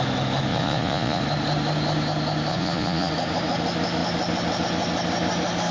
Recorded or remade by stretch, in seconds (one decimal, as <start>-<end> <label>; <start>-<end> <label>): 0.0-0.5 recorded; 0.5-1.2 remade; 1.2-2.5 recorded; 2.5-3.1 remade; 3.1-5.7 recorded